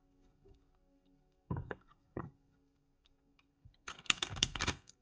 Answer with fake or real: fake